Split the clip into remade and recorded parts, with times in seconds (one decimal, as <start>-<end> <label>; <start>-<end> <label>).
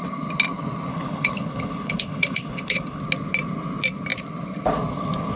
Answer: 0.0-0.9 recorded; 0.9-3.0 remade; 3.0-5.4 recorded